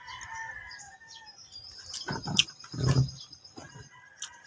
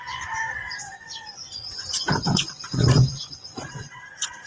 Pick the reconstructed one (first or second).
second